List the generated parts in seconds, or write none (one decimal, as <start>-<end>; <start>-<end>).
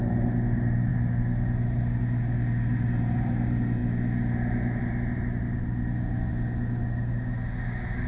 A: none